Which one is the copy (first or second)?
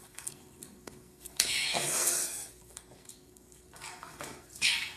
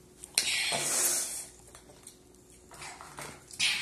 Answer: first